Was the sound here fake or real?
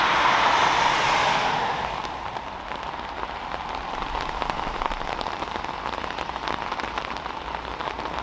real